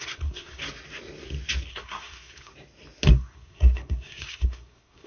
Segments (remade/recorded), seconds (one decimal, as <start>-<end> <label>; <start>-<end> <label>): 0.0-0.6 remade; 0.6-1.7 recorded; 1.7-2.5 remade; 2.5-3.1 recorded; 3.1-5.1 remade